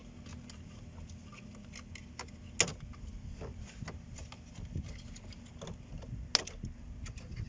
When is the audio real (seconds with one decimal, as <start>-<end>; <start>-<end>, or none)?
0.0-7.5